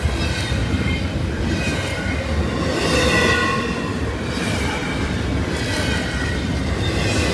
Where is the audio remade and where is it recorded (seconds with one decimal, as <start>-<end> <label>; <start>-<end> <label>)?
0.0-0.6 recorded; 0.6-1.4 remade; 1.4-7.3 recorded